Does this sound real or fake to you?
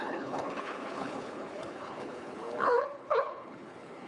fake